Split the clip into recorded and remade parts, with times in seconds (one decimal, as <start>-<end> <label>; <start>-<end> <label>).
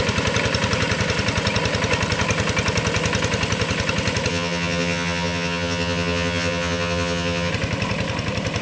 0.0-4.3 recorded; 4.3-7.5 remade; 7.5-8.6 recorded